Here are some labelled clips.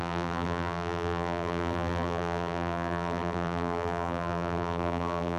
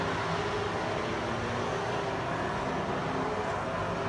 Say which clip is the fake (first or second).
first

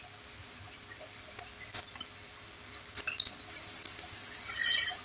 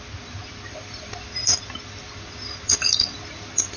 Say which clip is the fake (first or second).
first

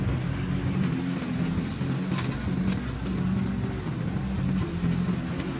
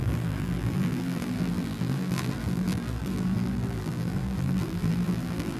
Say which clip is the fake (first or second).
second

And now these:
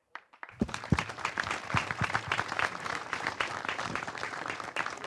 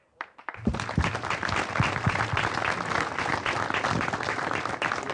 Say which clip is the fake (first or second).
first